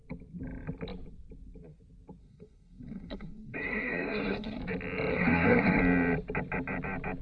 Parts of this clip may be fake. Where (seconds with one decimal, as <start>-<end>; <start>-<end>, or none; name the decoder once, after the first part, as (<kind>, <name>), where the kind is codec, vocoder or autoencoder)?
2.2-4.6 (codec, SNAC); 5.1-5.8